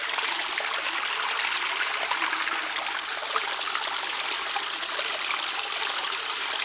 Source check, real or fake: real